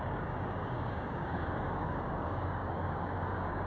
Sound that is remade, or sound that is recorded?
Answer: remade